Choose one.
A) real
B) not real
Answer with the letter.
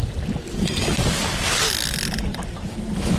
A